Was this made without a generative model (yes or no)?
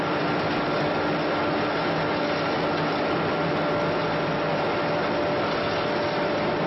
yes